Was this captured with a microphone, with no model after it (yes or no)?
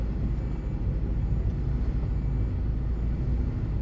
yes